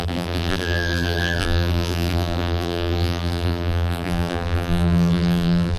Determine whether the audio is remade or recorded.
remade